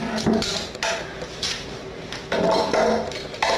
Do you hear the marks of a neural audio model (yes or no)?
no